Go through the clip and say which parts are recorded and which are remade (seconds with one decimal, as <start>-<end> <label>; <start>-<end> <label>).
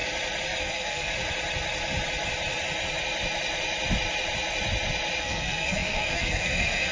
0.0-0.6 recorded; 0.6-1.1 remade; 1.1-5.2 recorded; 5.2-6.9 remade